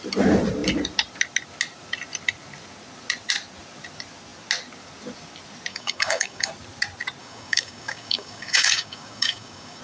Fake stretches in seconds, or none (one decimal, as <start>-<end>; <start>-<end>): 5.7-6.5; 7.2-9.8